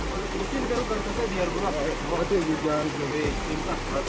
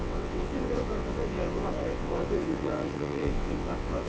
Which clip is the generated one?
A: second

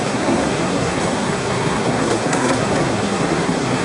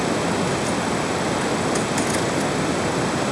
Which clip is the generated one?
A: first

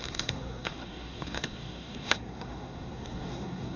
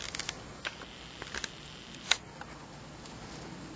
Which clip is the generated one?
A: first